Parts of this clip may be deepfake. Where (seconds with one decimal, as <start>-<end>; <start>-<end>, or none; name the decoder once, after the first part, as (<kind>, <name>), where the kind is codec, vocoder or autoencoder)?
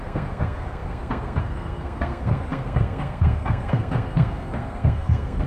0.0-5.5 (codec, SNAC)